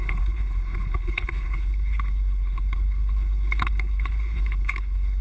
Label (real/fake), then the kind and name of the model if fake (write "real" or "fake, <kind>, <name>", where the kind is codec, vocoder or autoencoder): fake, codec, HILCodec